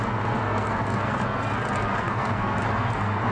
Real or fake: fake